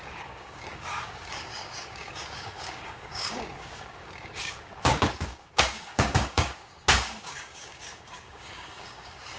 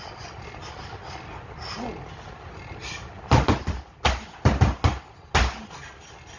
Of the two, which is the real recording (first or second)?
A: second